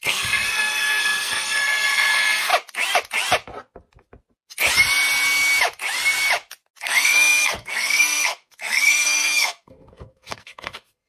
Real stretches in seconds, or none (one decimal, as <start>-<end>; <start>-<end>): 2.5-6.8